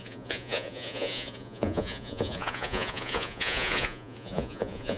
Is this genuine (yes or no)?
no